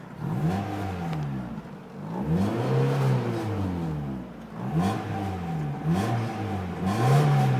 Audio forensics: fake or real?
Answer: real